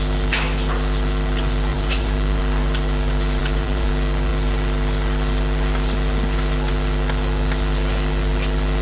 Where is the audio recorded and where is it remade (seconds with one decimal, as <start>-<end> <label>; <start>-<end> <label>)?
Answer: 0.0-1.7 recorded; 1.7-2.4 remade; 2.4-3.4 recorded; 3.4-3.9 remade; 3.9-8.8 recorded